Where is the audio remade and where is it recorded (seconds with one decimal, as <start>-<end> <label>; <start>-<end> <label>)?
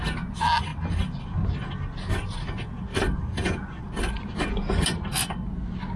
0.0-6.0 recorded